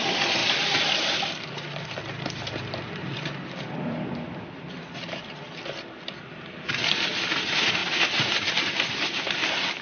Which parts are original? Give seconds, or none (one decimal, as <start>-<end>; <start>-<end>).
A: 2.0-3.0; 7.8-8.6